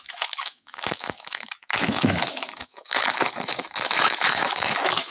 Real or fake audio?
fake